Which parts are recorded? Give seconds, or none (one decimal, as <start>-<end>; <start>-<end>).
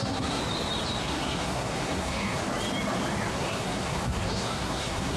0.4-1.0; 2.4-3.3